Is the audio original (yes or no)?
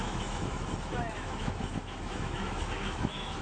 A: no